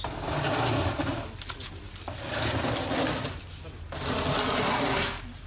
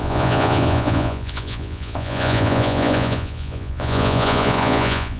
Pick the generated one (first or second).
second